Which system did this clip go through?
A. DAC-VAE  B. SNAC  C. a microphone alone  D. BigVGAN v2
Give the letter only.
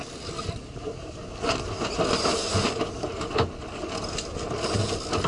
C